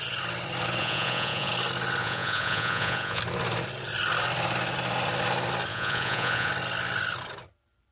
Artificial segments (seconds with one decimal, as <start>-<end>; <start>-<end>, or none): 0.8-1.5; 2.0-3.2; 5.7-6.5